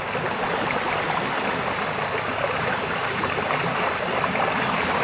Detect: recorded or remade recorded